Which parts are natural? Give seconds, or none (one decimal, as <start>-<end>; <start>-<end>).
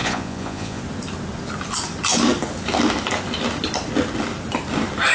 0.8-5.1